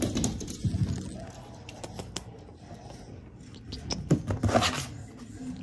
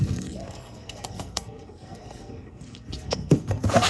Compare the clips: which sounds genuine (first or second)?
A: first